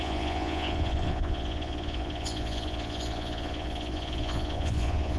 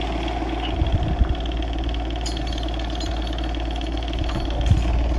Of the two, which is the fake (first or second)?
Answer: first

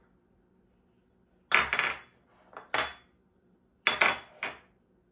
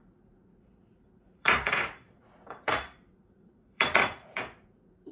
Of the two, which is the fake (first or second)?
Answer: second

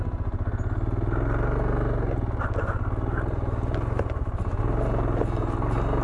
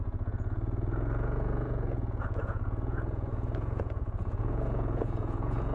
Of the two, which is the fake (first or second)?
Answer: second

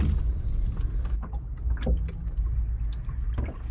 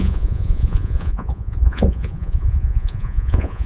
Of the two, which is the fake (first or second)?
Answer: second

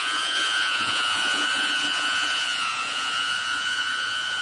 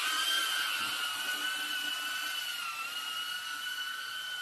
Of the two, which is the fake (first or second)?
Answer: first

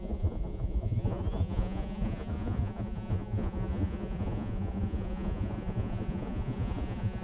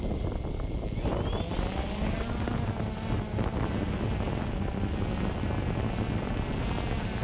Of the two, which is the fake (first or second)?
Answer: first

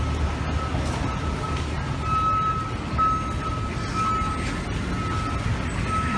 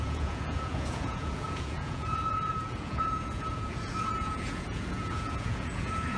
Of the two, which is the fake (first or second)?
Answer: second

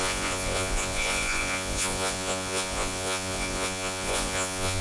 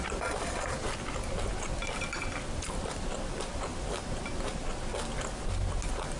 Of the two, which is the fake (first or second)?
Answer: first